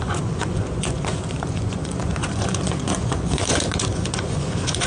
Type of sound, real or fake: fake